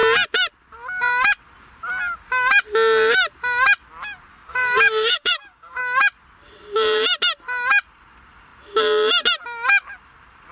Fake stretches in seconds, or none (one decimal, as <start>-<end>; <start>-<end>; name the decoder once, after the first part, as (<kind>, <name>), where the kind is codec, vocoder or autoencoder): 4.3-5.8 (codec, DAC)